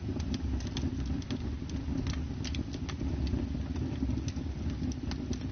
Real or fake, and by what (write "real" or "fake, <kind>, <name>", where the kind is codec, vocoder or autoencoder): real